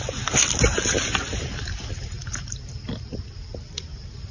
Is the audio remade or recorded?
recorded